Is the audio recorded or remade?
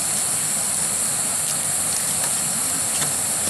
recorded